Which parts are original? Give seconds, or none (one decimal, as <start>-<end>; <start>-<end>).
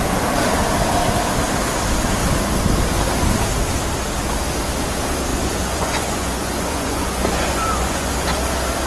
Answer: 0.0-5.3; 8.1-8.9